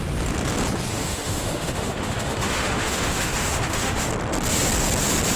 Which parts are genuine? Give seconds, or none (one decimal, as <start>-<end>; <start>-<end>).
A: 0.0-0.9; 4.1-5.4